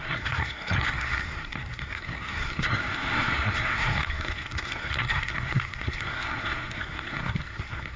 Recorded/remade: remade